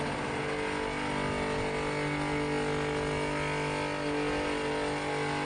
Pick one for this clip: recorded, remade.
recorded